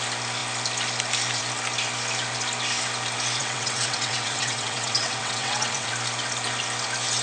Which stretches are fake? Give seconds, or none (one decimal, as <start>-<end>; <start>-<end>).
3.4-5.9